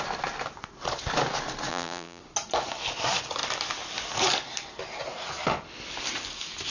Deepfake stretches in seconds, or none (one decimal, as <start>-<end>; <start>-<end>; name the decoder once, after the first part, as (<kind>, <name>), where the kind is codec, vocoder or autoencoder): 1.7-2.2 (vocoder, BigVGAN v2)